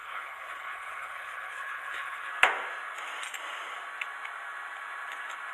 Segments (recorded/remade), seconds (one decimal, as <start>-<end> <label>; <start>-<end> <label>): 0.0-2.3 remade; 2.3-5.5 recorded